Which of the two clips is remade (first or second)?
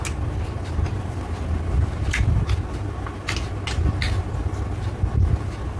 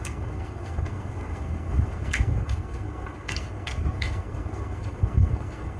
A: second